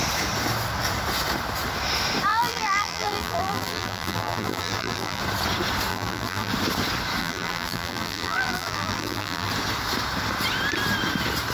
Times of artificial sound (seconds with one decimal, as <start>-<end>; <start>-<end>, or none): 2.3-5.2; 5.9-6.5; 7.2-9.5